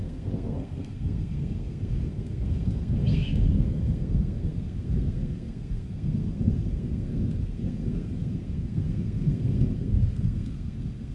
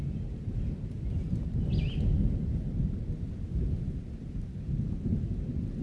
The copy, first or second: first